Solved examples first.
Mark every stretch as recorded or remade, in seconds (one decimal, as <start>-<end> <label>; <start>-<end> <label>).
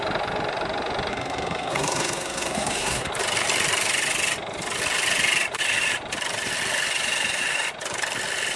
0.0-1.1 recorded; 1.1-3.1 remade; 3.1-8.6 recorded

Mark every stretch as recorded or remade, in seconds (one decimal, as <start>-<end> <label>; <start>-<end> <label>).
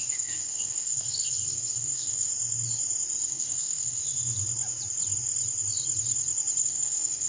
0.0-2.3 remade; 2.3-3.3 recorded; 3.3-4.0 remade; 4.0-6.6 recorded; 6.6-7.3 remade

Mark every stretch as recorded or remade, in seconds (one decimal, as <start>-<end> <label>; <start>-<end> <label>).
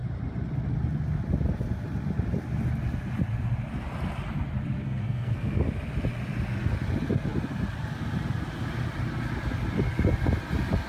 0.0-4.8 recorded; 4.8-5.7 remade; 5.7-10.9 recorded